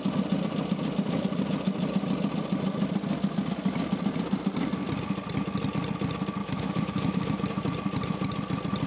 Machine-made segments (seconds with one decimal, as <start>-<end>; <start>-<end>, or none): 6.4-7.4